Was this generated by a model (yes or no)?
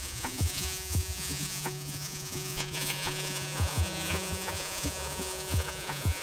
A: yes